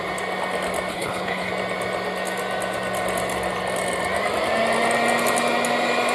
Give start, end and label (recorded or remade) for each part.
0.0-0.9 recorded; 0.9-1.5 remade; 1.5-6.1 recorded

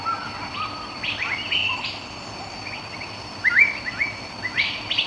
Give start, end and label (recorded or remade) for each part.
0.0-5.1 recorded

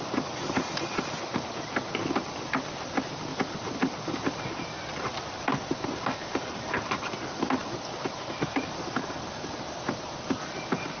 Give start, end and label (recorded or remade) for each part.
0.0-3.3 recorded; 3.3-7.1 remade; 7.1-11.0 recorded

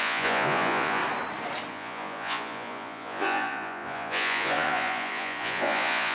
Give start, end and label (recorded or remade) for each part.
0.0-1.0 remade; 1.0-1.7 recorded; 1.7-6.1 remade